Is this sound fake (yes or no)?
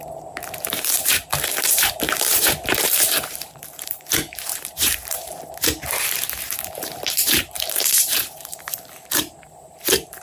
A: yes